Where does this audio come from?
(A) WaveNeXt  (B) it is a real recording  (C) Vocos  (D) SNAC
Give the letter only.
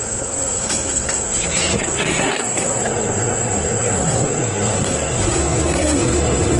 D